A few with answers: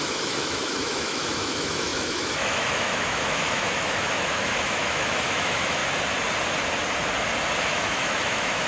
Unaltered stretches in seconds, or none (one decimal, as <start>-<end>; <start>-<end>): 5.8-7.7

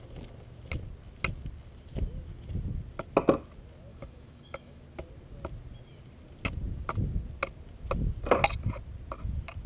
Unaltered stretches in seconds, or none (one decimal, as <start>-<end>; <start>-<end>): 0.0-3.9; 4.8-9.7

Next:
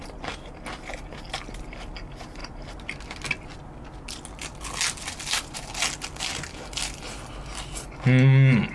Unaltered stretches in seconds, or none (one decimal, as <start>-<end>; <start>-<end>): 0.0-8.7

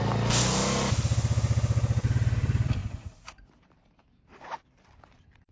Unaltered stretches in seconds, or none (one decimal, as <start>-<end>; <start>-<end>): 0.0-5.5

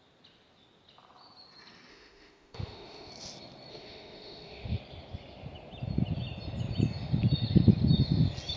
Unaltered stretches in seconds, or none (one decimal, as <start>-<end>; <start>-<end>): 0.0-1.9; 3.1-3.7; 4.8-8.6

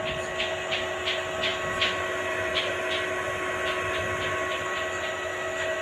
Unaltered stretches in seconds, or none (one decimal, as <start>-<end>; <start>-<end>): 0.0-5.8

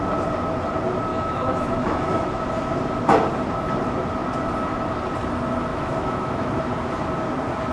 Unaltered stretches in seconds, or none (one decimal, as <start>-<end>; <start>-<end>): 0.0-1.1; 2.4-5.7; 6.6-7.7